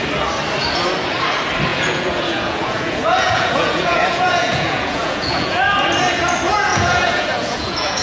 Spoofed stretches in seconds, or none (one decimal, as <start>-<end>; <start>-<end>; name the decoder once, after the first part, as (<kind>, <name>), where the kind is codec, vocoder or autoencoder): 1.7-5.6 (vocoder, Vocos); 6.7-8.0